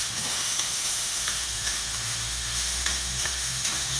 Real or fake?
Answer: fake